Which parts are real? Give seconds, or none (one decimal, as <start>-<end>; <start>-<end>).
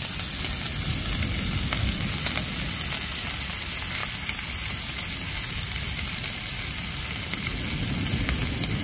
0.0-8.8